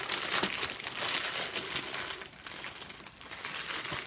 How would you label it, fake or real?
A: real